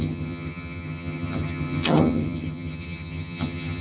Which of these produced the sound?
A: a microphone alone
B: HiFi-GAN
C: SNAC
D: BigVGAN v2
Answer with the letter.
B